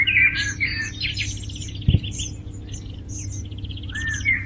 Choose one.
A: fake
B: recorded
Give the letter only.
B